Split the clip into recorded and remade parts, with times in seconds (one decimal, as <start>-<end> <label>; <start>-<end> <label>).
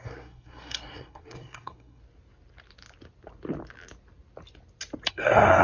0.0-2.0 remade; 2.0-5.1 recorded; 5.1-5.6 remade